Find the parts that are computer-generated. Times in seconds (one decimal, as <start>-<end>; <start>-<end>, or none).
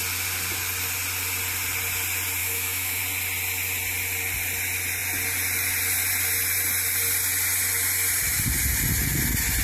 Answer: 2.4-3.0